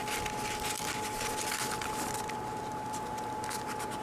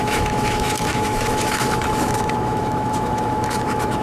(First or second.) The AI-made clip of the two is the second